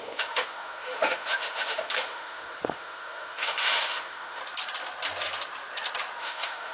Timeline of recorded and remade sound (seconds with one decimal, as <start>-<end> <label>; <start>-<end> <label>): 0.0-4.4 remade; 4.4-6.2 recorded; 6.2-6.7 remade